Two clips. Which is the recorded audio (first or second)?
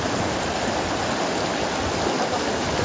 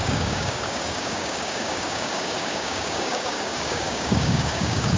first